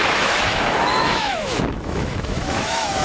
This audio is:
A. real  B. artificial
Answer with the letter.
B